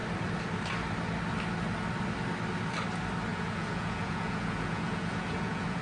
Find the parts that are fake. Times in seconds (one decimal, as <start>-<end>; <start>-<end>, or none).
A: 3.3-5.8

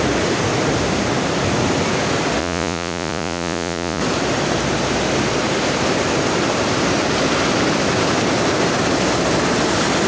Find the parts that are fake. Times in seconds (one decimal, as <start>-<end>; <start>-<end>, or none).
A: 2.4-4.0

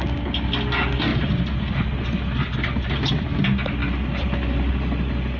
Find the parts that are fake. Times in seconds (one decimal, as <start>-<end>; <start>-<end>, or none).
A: none

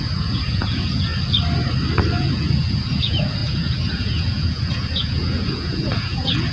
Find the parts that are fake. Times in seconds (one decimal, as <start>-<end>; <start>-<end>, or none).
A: 0.0-1.1; 2.1-6.5

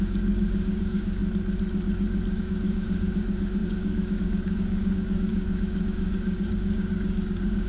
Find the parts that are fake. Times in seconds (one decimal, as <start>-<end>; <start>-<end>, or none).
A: 0.0-1.2; 2.4-7.7

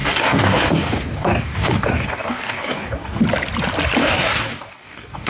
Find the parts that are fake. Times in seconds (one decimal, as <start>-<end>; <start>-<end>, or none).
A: 0.0-3.2; 4.0-5.3

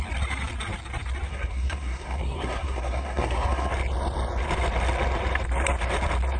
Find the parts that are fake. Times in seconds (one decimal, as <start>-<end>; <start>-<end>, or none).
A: 1.3-3.7